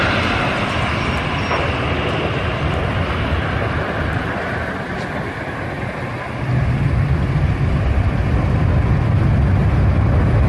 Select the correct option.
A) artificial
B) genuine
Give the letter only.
B